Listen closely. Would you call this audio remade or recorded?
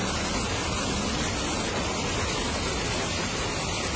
recorded